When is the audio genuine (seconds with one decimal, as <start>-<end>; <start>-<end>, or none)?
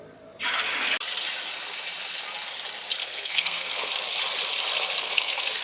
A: 0.0-3.0; 3.9-5.0